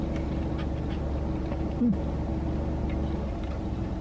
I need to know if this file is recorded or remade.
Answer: recorded